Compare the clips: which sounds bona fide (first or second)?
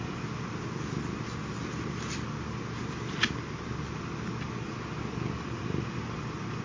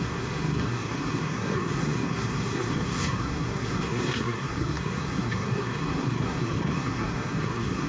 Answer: first